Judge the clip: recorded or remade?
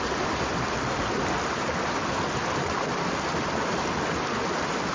recorded